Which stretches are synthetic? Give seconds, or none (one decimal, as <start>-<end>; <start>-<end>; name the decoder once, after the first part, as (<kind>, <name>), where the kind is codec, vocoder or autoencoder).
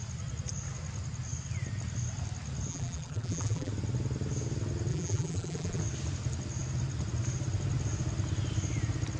2.7-3.7 (vocoder, BigVGAN v2); 4.9-5.8